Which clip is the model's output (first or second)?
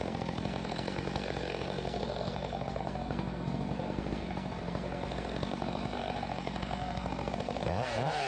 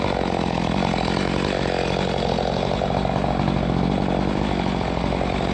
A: first